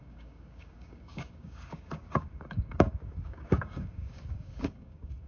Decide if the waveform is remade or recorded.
remade